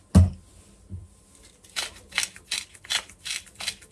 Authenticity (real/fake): real